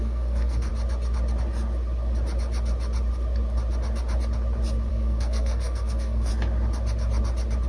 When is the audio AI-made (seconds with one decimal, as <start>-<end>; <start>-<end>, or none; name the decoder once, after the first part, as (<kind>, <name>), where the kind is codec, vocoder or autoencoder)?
0.0-0.7 (codec, SNAC); 4.9-6.3